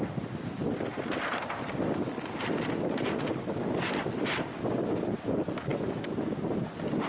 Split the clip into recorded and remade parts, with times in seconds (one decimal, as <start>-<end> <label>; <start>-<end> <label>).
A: 0.0-7.1 recorded